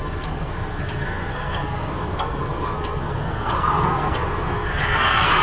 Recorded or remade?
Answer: remade